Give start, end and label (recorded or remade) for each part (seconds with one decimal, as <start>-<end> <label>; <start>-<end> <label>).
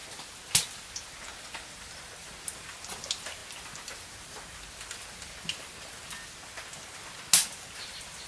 0.0-8.3 recorded